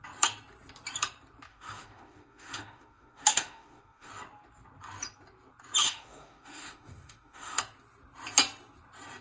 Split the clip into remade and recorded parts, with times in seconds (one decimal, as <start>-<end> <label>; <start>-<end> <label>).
0.0-1.5 recorded; 1.5-4.1 remade; 4.1-5.8 recorded; 5.8-7.6 remade; 7.6-9.2 recorded